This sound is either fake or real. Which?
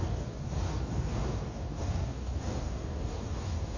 fake